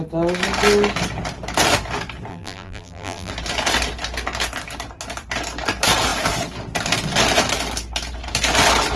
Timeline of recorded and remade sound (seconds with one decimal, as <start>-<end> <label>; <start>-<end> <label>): 0.0-2.3 recorded; 2.3-3.3 remade; 3.3-9.0 recorded